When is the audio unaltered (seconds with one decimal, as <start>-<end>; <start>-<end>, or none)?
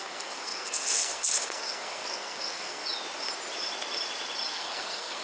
2.8-4.5